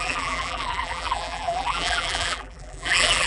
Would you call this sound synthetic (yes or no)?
yes